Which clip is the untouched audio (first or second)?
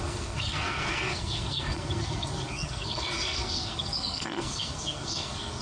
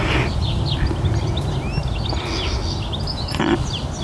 second